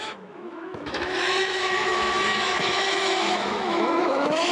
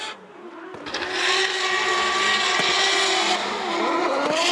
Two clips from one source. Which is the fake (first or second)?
first